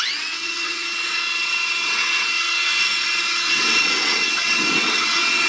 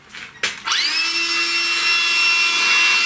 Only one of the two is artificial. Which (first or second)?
first